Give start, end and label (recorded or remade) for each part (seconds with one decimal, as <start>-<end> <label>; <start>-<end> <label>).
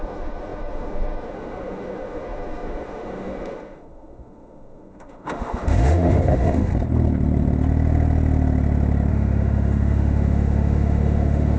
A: 0.0-6.7 remade; 6.7-9.1 recorded; 9.1-11.6 remade